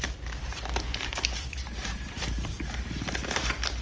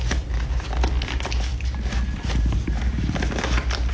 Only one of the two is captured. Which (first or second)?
second